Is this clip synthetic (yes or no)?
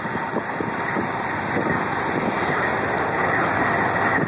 no